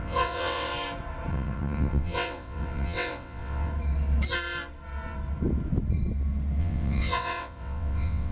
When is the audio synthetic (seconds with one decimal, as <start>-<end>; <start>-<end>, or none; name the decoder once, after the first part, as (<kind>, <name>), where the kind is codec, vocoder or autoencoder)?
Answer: 0.0-0.7 (vocoder, WaveNeXt); 1.3-3.7; 6.6-8.3